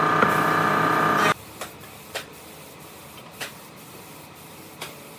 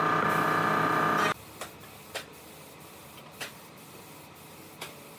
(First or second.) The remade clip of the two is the first